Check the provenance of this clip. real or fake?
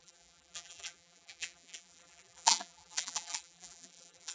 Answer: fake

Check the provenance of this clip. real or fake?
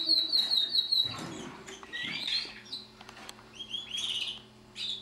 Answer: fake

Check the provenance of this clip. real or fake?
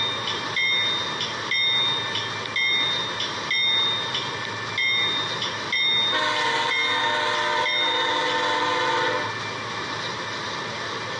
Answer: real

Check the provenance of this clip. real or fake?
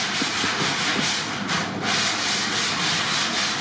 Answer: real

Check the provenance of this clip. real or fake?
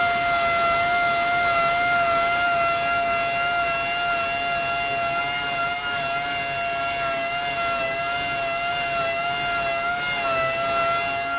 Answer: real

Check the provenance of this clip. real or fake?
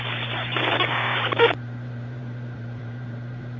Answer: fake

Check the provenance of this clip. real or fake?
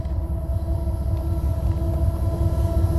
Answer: real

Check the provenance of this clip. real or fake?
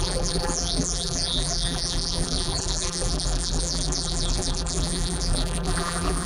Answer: fake